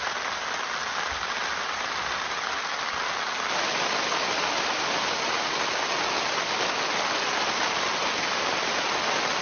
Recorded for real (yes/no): yes